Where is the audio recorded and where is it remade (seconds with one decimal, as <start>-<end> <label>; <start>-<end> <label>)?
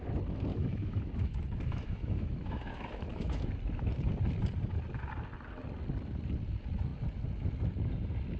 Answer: 0.0-0.5 recorded; 0.5-3.5 remade; 3.5-8.4 recorded